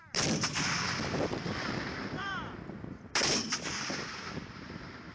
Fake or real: fake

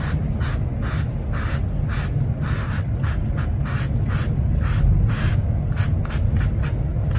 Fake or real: real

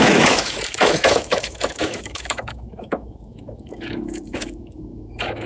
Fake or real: fake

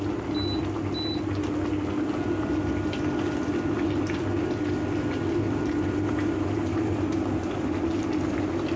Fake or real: real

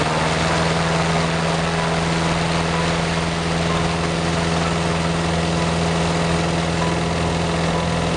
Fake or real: real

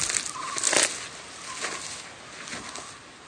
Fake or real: real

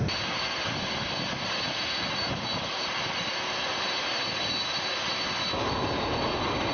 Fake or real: real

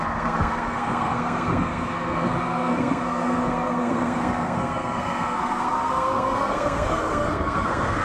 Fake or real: fake